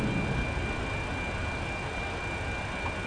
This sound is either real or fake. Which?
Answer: real